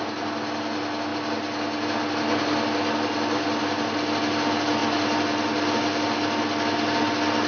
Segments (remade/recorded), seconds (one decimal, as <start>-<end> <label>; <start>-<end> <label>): 0.0-7.5 recorded